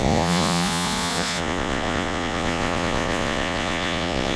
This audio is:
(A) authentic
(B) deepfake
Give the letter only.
B